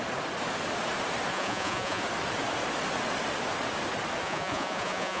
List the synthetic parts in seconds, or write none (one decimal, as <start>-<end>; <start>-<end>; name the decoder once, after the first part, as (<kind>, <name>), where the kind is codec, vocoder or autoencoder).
1.3-2.0 (vocoder, Vocos); 4.2-5.2